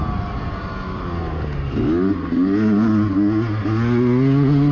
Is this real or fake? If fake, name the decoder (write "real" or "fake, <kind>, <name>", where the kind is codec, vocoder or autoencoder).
real